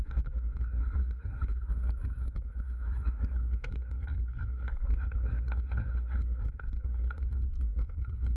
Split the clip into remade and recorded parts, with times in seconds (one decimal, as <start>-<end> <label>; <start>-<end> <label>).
0.0-8.4 remade